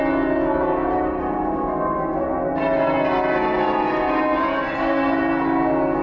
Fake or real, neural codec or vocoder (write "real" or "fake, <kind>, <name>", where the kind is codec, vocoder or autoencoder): real